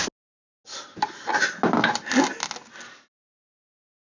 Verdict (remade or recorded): recorded